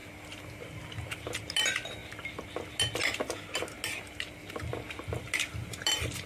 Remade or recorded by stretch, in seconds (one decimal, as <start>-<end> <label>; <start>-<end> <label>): 0.0-6.3 recorded